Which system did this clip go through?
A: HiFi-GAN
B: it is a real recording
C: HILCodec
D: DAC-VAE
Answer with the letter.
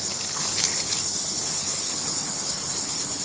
C